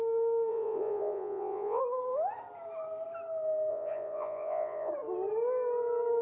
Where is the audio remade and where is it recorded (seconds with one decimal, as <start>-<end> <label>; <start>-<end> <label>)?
0.0-0.5 recorded; 0.5-1.8 remade; 1.8-3.7 recorded; 3.7-4.9 remade; 4.9-6.2 recorded